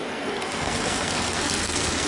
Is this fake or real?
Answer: fake